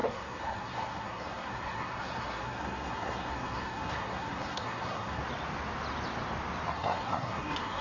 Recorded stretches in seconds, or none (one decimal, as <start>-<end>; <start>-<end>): 5.2-6.7